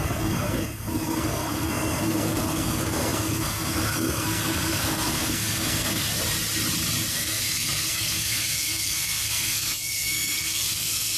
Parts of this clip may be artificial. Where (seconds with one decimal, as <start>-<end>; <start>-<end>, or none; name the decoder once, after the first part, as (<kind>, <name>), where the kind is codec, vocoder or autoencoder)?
0.0-6.1 (codec, SNAC); 7.1-11.2